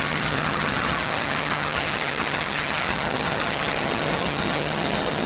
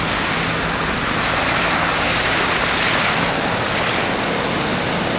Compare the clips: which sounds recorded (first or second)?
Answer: second